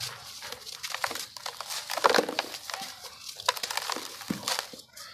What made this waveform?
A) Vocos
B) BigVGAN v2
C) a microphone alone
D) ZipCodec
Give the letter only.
C